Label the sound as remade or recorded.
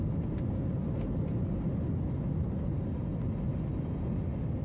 recorded